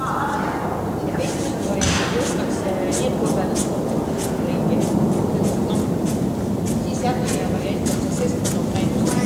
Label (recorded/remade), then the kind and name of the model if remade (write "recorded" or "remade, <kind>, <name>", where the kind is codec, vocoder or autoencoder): recorded